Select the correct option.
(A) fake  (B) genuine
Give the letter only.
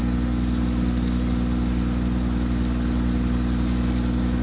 B